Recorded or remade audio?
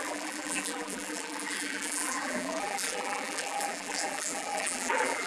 remade